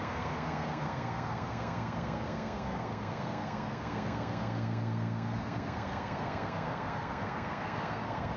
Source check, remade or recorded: remade